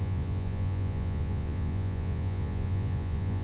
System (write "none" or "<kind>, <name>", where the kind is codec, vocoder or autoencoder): vocoder, Vocos